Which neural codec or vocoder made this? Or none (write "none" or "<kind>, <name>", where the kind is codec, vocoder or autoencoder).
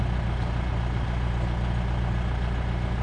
none